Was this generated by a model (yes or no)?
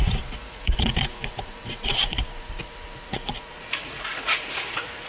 yes